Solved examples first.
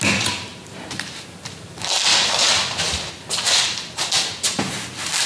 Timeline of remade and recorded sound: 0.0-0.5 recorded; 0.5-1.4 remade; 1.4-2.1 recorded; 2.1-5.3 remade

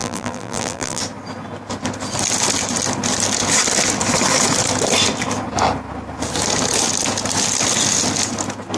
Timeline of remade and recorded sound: 0.0-1.0 remade; 1.0-8.8 recorded

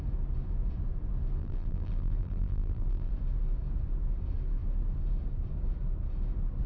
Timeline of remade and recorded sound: 0.0-1.4 recorded; 1.4-3.1 remade; 3.1-6.7 recorded

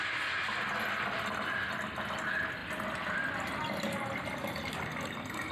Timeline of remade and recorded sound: 0.0-5.5 recorded